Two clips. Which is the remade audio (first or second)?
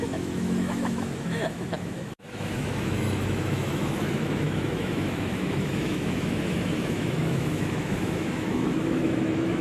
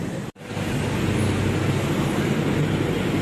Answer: first